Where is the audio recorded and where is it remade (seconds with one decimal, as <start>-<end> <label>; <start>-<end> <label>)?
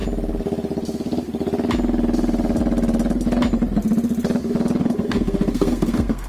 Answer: 0.0-4.8 recorded; 4.8-6.3 remade